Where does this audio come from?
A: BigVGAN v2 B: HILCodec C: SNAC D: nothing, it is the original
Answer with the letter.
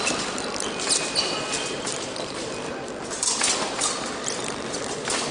A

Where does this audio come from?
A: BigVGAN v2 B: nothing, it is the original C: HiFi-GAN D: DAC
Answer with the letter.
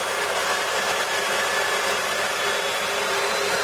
B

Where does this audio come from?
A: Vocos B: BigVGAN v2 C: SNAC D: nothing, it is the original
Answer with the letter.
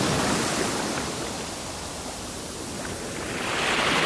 D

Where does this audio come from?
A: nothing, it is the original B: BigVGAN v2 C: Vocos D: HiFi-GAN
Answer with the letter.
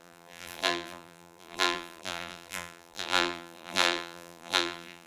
B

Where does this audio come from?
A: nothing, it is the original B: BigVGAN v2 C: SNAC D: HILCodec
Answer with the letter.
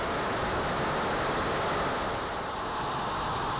A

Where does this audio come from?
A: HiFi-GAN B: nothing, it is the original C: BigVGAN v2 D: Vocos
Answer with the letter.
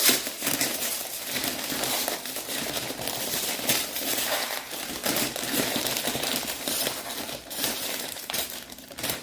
C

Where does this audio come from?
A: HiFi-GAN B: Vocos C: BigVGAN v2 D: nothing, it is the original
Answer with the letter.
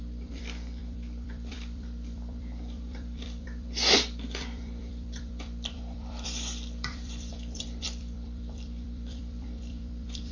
C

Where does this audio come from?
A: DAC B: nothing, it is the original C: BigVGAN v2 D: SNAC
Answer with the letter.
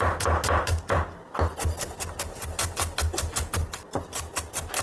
B